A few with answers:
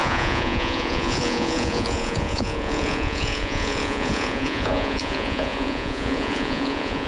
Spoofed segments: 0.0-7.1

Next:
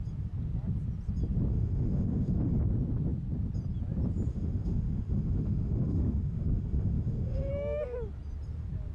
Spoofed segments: 1.5-2.6; 4.3-7.5

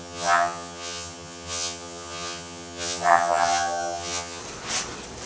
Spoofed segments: 0.0-4.4

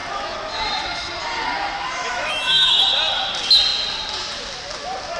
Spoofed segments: 2.0-2.8

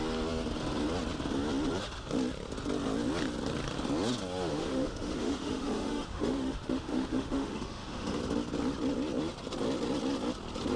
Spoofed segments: 4.5-8.2

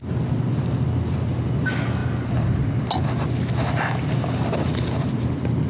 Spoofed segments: none